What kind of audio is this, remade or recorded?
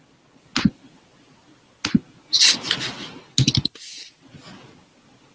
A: recorded